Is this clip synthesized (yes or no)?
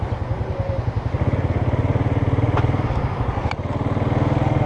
no